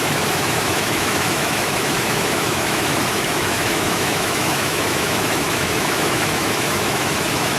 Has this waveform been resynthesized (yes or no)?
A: yes